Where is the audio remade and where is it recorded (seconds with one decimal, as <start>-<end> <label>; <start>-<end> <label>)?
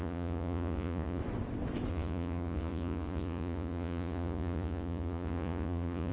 0.0-1.2 remade; 1.2-1.9 recorded; 1.9-6.1 remade